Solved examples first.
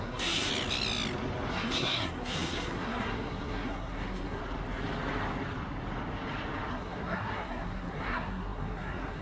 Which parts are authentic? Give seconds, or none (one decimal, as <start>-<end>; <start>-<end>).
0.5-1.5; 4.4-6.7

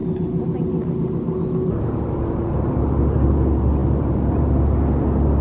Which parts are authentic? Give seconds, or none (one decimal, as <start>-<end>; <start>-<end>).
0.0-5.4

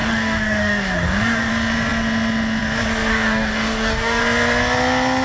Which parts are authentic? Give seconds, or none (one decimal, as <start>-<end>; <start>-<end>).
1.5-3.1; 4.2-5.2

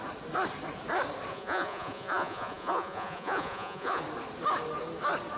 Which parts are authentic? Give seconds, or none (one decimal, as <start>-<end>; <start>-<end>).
0.0-1.3; 4.0-5.4

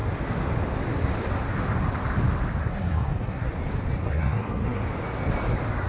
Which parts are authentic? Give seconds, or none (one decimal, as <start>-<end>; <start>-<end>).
0.0-2.6; 3.5-4.0; 4.8-5.9

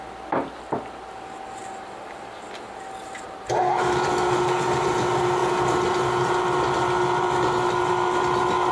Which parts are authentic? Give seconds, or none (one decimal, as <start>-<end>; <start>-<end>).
0.0-8.7

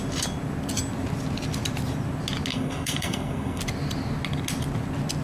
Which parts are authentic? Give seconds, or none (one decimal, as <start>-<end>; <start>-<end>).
0.0-2.5; 3.6-5.2